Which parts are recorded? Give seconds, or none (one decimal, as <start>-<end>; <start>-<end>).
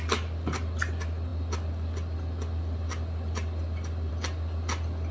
0.0-5.1